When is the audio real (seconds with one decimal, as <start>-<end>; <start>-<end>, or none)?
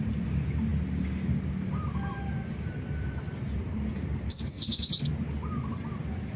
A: 0.0-4.3; 4.9-6.4